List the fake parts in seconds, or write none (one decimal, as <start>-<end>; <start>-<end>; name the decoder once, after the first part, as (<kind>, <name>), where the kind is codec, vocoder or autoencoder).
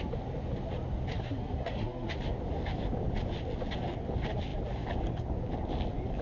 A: 1.1-2.1 (codec, SNAC)